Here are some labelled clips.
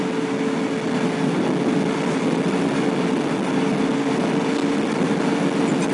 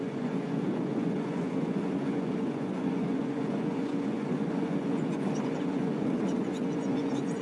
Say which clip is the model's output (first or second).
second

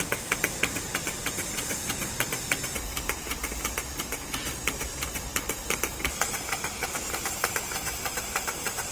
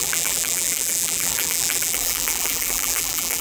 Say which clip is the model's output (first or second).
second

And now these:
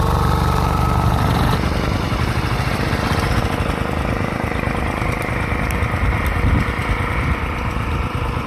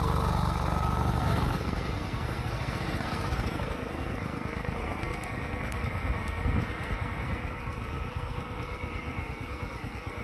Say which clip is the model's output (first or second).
second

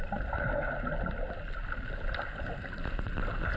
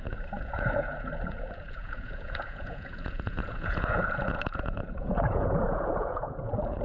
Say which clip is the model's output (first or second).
second